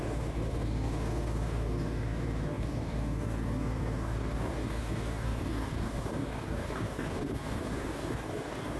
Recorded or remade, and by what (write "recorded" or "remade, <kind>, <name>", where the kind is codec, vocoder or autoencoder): remade, codec, DAC